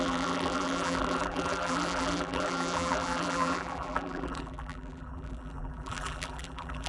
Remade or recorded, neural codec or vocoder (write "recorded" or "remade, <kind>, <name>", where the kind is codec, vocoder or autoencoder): remade, vocoder, BigVGAN v2